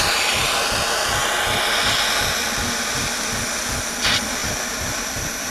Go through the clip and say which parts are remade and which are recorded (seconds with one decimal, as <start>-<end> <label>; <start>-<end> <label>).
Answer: 0.0-1.2 remade; 1.2-3.9 recorded; 3.9-4.4 remade; 4.4-5.1 recorded; 5.1-5.5 remade